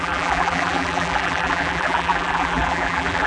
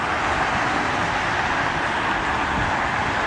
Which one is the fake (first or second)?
first